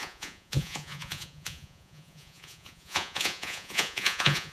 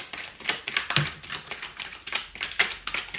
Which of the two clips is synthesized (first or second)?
first